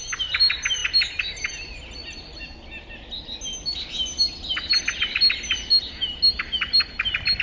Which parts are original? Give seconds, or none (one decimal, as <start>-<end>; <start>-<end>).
0.0-7.4